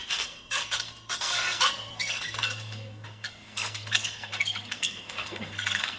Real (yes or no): no